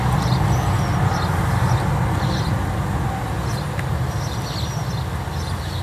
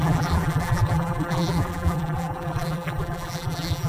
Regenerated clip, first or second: second